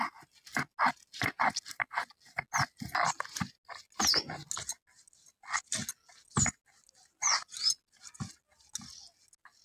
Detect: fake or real real